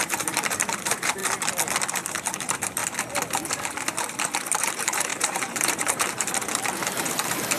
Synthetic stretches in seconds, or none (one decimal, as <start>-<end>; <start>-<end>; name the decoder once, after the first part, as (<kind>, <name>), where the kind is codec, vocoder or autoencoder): 0.0-1.2 (vocoder, BigVGAN v2); 2.1-2.8; 3.5-7.6